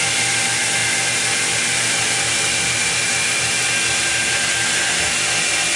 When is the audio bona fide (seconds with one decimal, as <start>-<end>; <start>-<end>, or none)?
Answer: 0.0-0.8; 4.3-5.8